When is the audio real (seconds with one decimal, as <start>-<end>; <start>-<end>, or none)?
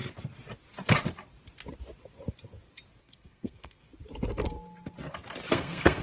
0.0-3.0; 3.9-5.5